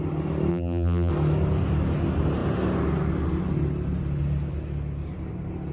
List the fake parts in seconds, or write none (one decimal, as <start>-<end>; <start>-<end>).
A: 0.5-1.1